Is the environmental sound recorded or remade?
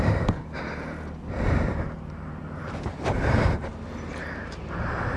remade